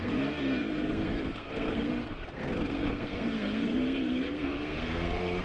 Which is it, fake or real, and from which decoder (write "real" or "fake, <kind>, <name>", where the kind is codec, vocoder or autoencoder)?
fake, codec, SNAC